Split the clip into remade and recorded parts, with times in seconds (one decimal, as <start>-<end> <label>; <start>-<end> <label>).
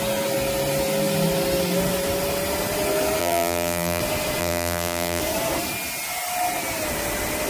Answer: 0.0-3.2 recorded; 3.2-4.0 remade; 4.0-4.4 recorded; 4.4-5.2 remade; 5.2-7.5 recorded